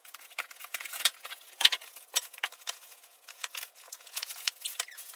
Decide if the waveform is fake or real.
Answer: fake